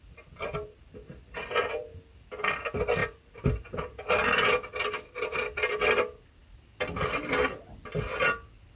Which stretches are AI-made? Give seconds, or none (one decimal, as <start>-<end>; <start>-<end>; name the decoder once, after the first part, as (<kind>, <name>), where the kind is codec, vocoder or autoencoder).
none